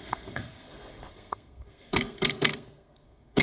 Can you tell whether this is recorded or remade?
remade